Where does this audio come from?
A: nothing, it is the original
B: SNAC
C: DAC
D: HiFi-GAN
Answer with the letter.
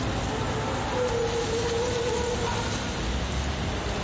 A